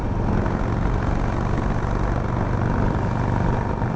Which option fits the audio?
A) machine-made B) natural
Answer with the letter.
B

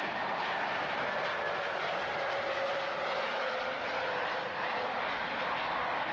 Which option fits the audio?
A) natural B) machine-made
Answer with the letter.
A